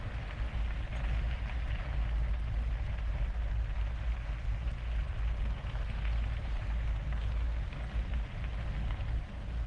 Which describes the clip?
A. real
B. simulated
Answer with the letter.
A